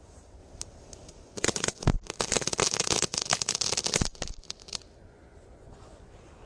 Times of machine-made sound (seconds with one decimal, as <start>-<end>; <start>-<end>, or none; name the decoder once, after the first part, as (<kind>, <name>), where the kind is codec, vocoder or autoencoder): 0.0-0.4 (vocoder, Vocos); 1.1-1.9; 5.0-6.5